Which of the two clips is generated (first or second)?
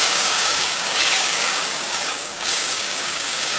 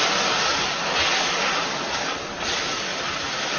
first